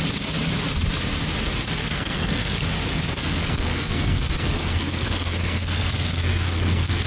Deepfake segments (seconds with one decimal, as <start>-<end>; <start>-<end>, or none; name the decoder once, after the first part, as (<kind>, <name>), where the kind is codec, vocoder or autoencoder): 1.8-2.5 (codec, SNAC); 3.2-7.1